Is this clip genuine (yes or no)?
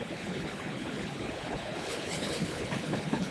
no